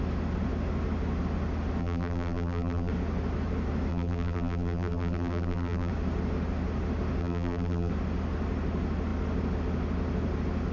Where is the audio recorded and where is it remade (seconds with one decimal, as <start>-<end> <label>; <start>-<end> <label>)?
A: 0.0-1.8 recorded; 1.8-2.9 remade; 2.9-3.9 recorded; 3.9-5.9 remade; 5.9-7.2 recorded; 7.2-7.9 remade; 7.9-10.7 recorded